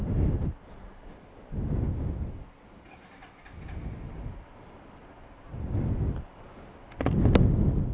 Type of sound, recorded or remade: recorded